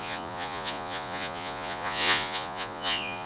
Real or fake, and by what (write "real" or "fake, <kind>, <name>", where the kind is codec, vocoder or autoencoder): fake, vocoder, Vocos